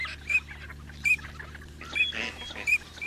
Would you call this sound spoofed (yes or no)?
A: no